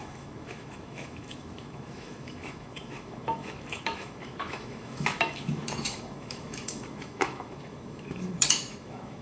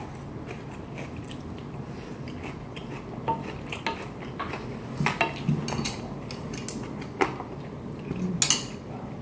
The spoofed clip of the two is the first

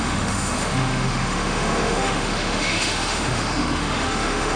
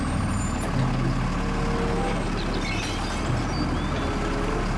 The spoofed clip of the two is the first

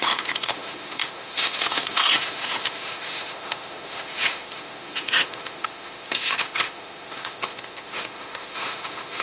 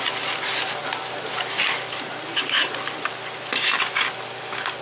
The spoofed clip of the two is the first